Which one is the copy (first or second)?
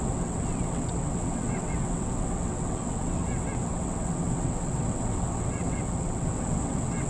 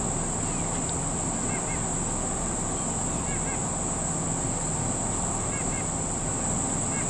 first